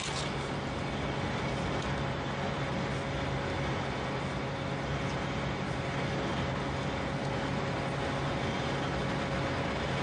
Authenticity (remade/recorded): recorded